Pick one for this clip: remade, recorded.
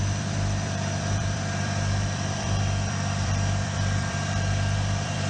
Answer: remade